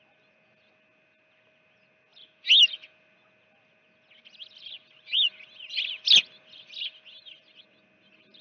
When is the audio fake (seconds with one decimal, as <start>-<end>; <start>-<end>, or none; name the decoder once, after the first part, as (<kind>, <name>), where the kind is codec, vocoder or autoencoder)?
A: none